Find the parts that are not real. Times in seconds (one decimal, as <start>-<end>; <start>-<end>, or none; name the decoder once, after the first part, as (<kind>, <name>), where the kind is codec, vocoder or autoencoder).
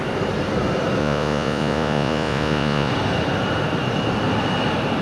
1.0-2.9 (vocoder, Vocos)